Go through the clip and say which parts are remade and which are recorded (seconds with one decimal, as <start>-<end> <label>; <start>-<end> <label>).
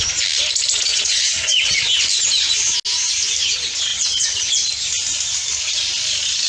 0.0-0.9 recorded; 0.9-1.8 remade; 1.8-3.9 recorded; 3.9-4.7 remade; 4.7-6.5 recorded